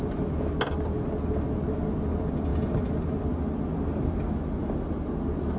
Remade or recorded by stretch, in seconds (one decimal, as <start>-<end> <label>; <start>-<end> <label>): 0.0-5.6 recorded